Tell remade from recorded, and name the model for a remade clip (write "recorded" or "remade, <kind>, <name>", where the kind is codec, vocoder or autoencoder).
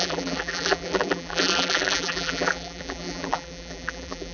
remade, vocoder, BigVGAN v2